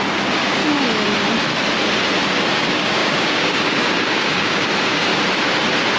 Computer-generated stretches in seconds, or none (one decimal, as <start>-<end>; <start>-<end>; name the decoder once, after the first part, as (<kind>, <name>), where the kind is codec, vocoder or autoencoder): 0.0-0.6 (codec, DAC); 2.5-5.1

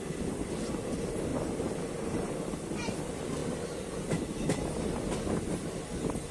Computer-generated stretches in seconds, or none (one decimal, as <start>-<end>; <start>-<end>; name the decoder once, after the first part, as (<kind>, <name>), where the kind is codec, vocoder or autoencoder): none